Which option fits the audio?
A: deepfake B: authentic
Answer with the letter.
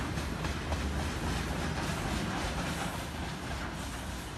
B